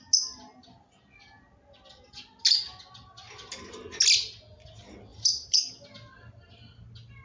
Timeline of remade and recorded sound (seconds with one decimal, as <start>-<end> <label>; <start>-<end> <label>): 0.0-5.1 recorded; 5.1-5.6 remade; 5.6-7.2 recorded